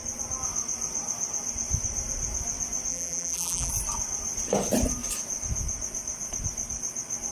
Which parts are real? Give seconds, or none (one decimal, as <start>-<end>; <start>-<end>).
0.0-2.9; 3.7-7.3